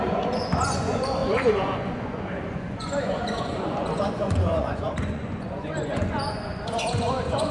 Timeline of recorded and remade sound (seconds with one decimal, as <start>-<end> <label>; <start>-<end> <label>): 0.0-7.5 remade